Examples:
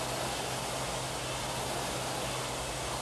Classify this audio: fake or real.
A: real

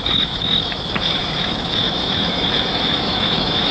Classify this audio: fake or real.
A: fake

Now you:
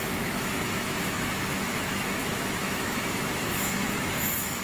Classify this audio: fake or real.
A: fake